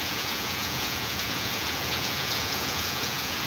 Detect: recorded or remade remade